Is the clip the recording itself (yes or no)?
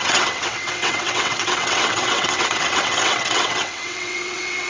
no